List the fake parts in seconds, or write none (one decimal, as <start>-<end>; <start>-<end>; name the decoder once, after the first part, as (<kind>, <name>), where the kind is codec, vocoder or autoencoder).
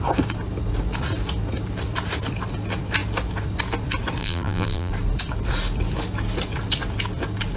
4.2-4.9 (vocoder, BigVGAN v2)